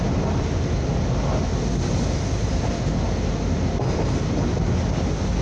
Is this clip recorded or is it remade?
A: recorded